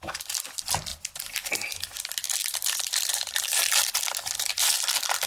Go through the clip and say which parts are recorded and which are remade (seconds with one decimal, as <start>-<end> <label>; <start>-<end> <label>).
0.0-5.3 recorded